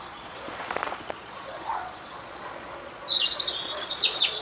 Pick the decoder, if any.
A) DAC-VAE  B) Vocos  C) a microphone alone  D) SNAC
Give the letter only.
B